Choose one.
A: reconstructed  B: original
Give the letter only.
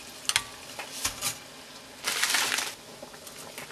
B